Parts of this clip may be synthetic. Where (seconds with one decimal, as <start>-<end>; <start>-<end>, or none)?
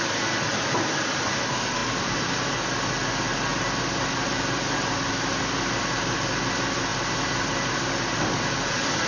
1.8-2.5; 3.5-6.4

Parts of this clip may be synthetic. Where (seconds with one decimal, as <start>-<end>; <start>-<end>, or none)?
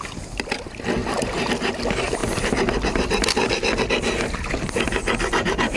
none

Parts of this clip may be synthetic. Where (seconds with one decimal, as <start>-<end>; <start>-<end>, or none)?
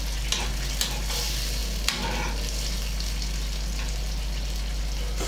none